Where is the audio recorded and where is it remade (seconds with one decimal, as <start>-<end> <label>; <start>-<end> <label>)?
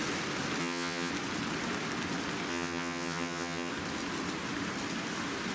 0.0-0.6 recorded; 0.6-1.1 remade; 1.1-2.5 recorded; 2.5-3.7 remade; 3.7-5.5 recorded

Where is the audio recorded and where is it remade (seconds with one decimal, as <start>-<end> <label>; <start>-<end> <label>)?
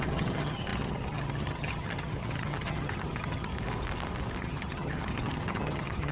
0.0-3.5 remade; 3.5-4.4 recorded; 4.4-6.1 remade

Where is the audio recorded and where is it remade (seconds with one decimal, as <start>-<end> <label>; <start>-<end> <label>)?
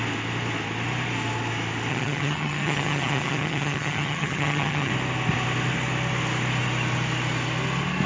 0.0-1.9 recorded; 1.9-4.9 remade; 4.9-8.1 recorded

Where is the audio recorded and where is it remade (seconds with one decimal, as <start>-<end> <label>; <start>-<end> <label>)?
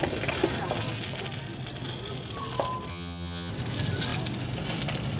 0.0-2.9 recorded; 2.9-3.5 remade; 3.5-5.2 recorded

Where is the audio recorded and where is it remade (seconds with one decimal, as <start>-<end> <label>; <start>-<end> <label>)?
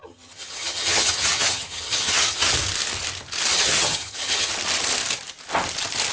0.0-2.5 remade; 2.5-3.5 recorded; 3.5-4.5 remade; 4.5-6.1 recorded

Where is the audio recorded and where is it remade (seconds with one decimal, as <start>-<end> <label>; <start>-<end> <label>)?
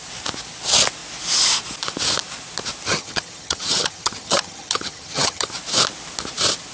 0.0-2.9 recorded; 2.9-5.5 remade; 5.5-6.7 recorded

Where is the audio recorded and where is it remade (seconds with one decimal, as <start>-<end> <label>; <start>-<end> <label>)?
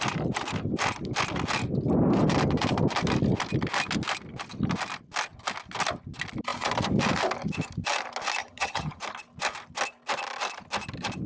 0.0-8.4 recorded; 8.4-9.0 remade; 9.0-11.3 recorded